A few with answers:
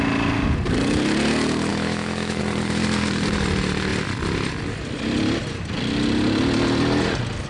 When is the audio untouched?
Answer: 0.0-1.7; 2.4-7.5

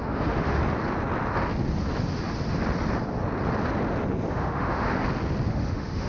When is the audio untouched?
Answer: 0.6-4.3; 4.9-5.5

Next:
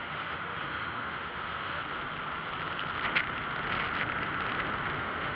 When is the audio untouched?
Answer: 1.8-5.0

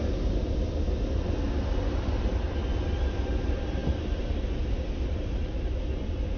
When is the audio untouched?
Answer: 0.0-6.4